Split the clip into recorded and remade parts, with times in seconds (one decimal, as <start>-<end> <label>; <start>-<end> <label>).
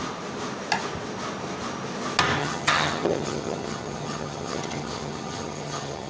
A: 0.0-2.4 recorded; 2.4-6.1 remade